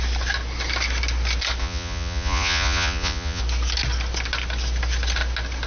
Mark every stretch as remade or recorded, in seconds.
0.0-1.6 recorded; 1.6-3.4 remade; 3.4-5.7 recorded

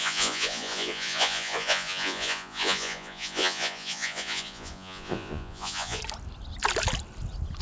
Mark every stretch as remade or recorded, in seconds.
0.0-6.0 remade; 6.0-7.6 recorded

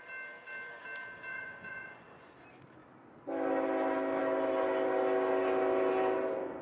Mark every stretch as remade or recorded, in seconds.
0.0-1.3 recorded; 1.3-2.4 remade; 2.4-6.6 recorded

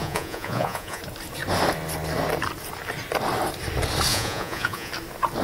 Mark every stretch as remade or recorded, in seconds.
0.0-1.0 remade; 1.0-4.1 recorded; 4.1-4.9 remade; 4.9-5.4 recorded

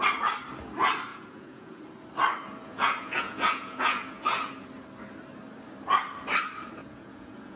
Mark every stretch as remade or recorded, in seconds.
0.0-1.1 recorded; 1.1-1.8 remade; 1.8-2.6 recorded; 2.6-4.5 remade; 4.5-6.8 recorded; 6.8-7.6 remade

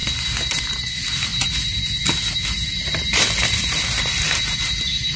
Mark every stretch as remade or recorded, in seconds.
0.0-5.2 recorded

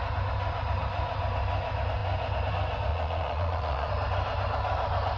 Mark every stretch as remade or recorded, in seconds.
0.0-2.9 recorded; 2.9-3.9 remade; 3.9-5.2 recorded